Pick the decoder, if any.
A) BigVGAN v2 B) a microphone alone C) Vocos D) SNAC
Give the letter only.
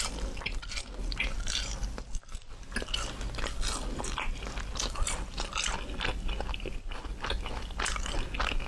B